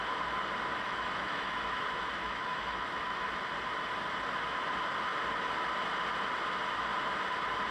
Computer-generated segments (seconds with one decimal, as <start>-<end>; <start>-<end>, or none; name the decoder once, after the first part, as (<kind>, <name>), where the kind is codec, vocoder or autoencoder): 0.7-3.4 (autoencoder, DAC-VAE)